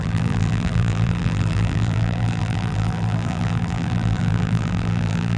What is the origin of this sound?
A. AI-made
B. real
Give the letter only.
A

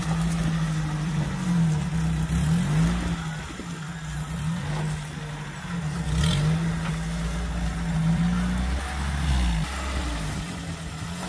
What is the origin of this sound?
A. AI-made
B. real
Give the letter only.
B